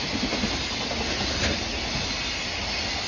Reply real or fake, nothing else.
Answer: real